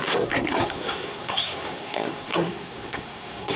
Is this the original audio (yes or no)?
no